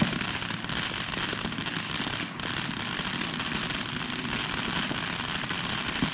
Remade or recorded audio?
recorded